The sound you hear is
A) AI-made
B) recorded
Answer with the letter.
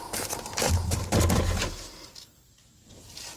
B